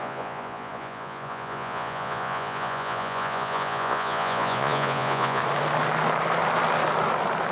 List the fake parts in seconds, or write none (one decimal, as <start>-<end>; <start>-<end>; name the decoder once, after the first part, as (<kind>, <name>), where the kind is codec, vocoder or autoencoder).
0.0-5.4 (vocoder, Vocos)